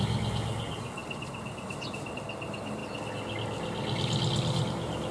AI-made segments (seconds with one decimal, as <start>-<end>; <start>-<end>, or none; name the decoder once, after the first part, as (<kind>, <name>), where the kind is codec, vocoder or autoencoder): none

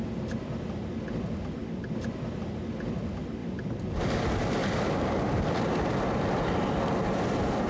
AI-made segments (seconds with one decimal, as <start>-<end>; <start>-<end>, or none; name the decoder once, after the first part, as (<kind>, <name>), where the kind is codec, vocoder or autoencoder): 3.4-4.1 (vocoder, BigVGAN v2); 4.6-5.9

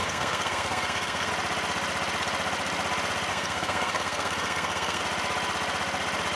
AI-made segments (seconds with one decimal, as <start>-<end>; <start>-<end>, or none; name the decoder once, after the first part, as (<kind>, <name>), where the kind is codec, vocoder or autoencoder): 0.0-1.3 (codec, SNAC); 3.3-5.0

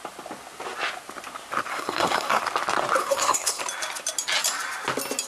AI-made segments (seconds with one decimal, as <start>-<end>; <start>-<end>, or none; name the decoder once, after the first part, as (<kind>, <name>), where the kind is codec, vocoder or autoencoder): 1.7-2.4 (codec, SNAC); 3.0-3.6

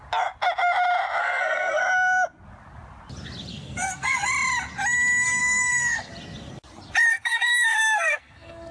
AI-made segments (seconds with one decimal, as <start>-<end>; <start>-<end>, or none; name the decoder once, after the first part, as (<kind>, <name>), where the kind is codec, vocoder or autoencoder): 1.2-1.8 (codec, SNAC); 3.5-4.3; 5.4-6.1; 7.1-8.7

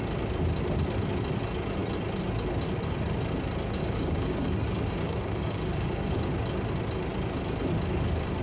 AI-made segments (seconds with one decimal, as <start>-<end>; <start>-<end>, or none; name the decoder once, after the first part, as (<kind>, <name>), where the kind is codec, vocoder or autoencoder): 3.8-6.2 (codec, DAC)